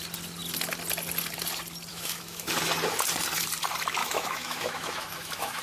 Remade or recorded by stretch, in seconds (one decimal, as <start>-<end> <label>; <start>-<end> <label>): 0.0-1.9 recorded; 1.9-2.5 remade; 2.5-4.0 recorded; 4.0-5.6 remade